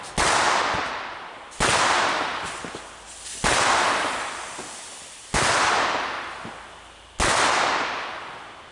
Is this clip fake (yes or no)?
no